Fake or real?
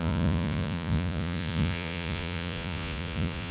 fake